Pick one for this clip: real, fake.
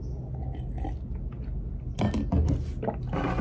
real